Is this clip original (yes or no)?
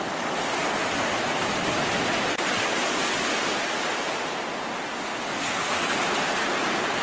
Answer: yes